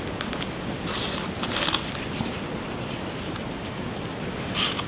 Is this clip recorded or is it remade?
recorded